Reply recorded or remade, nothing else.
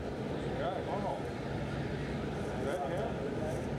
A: recorded